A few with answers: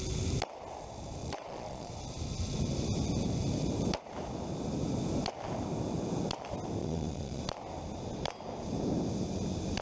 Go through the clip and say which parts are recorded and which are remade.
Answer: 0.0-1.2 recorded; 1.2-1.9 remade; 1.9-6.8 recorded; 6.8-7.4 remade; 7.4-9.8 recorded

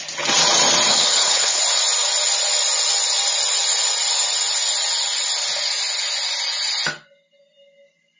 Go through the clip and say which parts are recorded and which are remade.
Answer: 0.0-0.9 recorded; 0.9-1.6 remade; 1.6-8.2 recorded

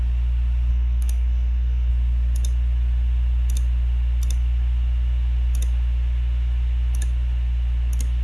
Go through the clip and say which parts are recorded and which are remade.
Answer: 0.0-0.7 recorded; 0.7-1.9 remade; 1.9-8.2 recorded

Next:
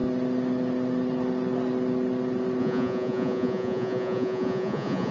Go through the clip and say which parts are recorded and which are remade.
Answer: 0.0-2.6 recorded; 2.6-5.1 remade

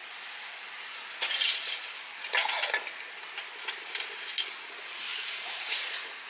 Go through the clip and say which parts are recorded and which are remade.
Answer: 0.0-5.1 recorded; 5.1-6.3 remade

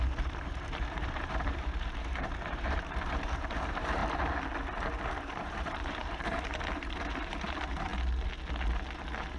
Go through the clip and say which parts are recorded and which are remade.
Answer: 0.0-4.0 remade; 4.0-5.0 recorded; 5.0-7.9 remade; 7.9-9.4 recorded